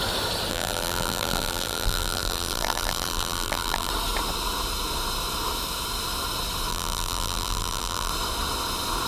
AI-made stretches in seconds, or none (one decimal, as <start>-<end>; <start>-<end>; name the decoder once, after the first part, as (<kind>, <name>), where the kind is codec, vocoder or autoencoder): 0.5-3.9 (vocoder, BigVGAN v2); 6.7-8.1